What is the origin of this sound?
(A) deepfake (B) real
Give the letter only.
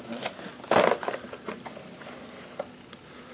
B